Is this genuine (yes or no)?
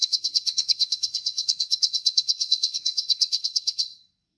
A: no